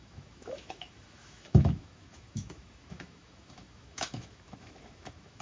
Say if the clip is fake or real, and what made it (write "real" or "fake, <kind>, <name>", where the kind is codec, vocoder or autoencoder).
fake, autoencoder, DAC-VAE